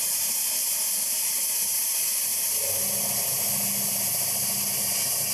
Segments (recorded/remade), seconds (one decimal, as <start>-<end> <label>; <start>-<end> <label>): 0.0-5.3 recorded